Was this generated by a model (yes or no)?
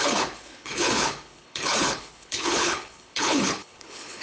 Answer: yes